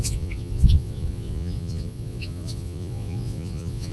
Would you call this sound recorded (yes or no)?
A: no